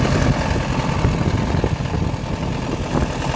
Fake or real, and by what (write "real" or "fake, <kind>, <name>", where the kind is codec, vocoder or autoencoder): real